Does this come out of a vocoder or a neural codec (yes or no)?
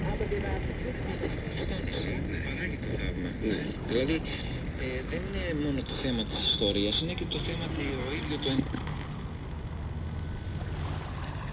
no